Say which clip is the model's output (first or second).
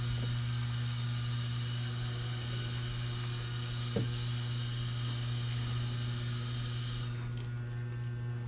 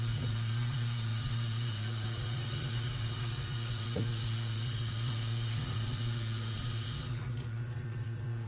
second